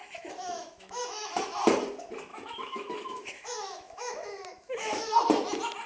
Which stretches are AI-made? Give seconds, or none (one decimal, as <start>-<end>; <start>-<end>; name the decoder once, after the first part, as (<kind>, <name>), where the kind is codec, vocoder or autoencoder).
0.0-1.4 (autoencoder, DAC-VAE); 2.3-5.1